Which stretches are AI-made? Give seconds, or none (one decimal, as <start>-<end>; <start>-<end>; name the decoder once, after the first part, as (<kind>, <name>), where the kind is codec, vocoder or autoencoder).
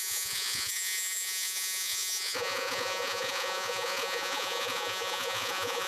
0.0-5.9 (vocoder, Vocos)